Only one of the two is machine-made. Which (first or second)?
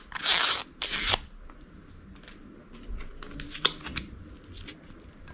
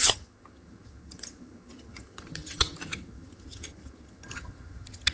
second